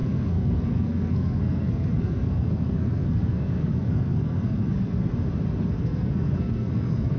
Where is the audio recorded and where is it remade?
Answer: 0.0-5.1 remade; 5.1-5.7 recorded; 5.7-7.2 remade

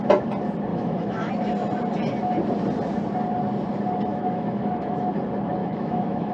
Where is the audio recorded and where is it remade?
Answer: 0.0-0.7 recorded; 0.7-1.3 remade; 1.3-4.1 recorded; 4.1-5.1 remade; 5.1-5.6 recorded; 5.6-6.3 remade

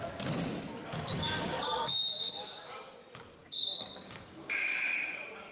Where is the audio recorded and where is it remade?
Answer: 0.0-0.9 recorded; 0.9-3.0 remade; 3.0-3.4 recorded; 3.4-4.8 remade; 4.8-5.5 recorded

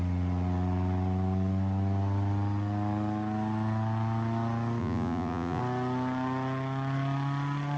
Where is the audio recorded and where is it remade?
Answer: 0.0-4.8 recorded; 4.8-5.6 remade; 5.6-7.8 recorded

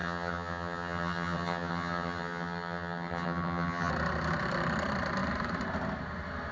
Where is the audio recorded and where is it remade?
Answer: 0.0-3.9 remade; 3.9-6.5 recorded